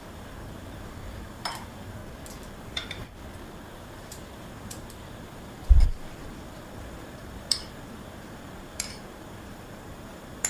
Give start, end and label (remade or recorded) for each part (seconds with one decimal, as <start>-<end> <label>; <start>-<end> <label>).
0.0-2.0 remade; 2.0-2.6 recorded; 2.6-3.0 remade; 3.0-3.7 recorded; 3.7-10.5 remade